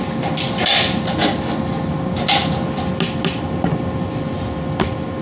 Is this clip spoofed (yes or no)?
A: no